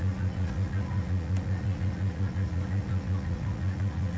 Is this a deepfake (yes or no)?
yes